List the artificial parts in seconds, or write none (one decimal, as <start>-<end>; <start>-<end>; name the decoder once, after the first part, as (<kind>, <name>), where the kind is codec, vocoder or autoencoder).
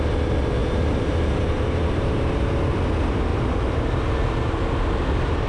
0.6-2.3 (vocoder, BigVGAN v2); 3.3-3.8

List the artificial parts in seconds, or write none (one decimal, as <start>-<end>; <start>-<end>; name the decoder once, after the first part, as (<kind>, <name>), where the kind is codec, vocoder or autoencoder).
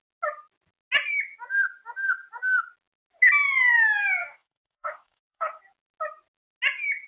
4.2-5.6 (codec, DAC)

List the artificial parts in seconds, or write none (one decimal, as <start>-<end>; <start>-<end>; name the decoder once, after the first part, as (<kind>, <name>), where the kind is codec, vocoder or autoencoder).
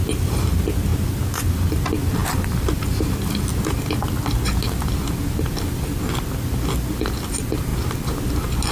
none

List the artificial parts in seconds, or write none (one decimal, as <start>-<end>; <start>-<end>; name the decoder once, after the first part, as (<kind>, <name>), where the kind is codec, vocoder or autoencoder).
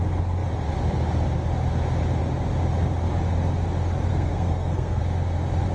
4.1-5.0 (codec, SNAC)